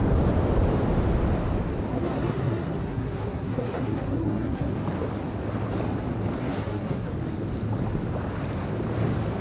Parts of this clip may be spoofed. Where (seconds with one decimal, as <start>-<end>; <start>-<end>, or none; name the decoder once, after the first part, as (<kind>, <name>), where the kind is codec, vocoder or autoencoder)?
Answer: 1.9-4.7 (codec, SNAC); 6.4-7.1